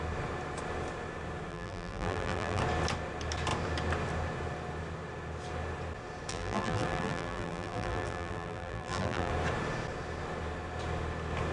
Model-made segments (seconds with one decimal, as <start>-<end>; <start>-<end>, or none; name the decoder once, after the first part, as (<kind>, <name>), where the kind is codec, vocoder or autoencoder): 1.5-2.6 (vocoder, BigVGAN v2); 6.3-9.3